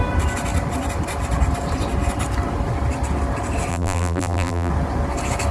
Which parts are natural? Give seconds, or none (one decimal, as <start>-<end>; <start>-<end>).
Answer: 0.0-3.7; 4.7-5.5